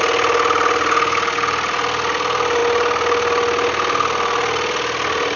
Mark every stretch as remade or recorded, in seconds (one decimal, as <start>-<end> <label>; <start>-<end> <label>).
0.0-5.4 recorded